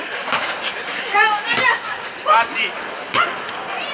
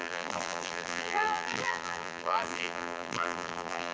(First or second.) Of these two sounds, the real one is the first